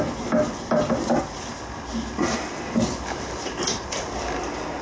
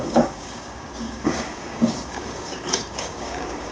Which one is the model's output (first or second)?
second